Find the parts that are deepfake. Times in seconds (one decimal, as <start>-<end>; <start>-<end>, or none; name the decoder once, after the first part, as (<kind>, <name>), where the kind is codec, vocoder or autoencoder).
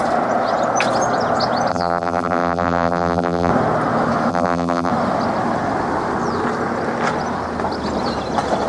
1.7-3.5 (vocoder, BigVGAN v2); 4.3-4.9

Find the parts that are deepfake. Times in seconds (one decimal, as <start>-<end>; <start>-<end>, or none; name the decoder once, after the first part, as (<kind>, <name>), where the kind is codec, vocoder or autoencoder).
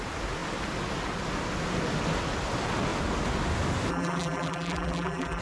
3.9-5.4 (vocoder, BigVGAN v2)